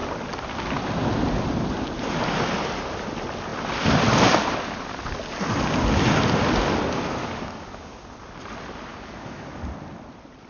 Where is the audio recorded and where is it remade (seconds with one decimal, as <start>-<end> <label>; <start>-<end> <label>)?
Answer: 0.0-7.2 recorded; 7.2-8.1 remade; 8.1-8.9 recorded; 8.9-9.6 remade; 9.6-10.5 recorded